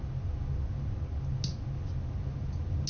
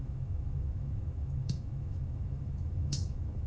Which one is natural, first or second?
first